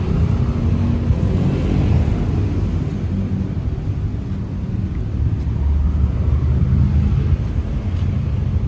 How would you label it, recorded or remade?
recorded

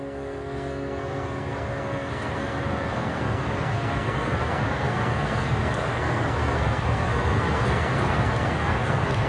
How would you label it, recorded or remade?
remade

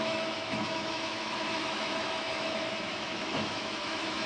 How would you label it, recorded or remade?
remade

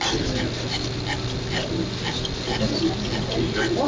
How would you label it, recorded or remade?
recorded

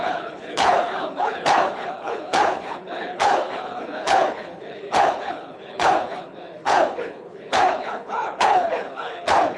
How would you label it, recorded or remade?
remade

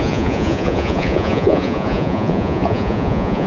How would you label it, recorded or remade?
remade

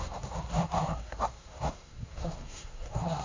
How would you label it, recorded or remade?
remade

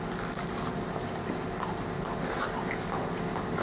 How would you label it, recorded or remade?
recorded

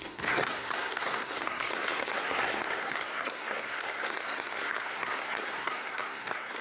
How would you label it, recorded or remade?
remade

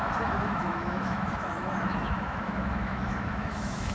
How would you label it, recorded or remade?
remade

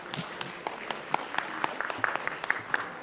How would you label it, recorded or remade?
recorded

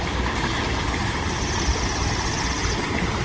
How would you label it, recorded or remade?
remade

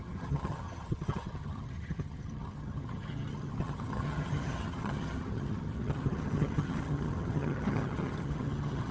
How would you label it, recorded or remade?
remade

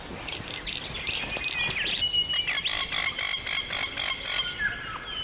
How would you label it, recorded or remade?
recorded